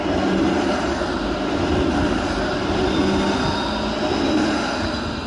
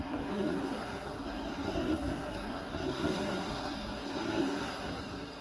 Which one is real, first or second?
first